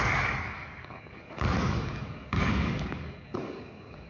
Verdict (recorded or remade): remade